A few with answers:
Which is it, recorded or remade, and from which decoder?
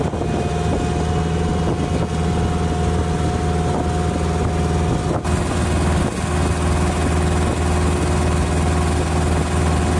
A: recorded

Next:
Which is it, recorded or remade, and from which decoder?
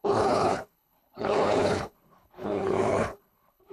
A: remade, codec, HILCodec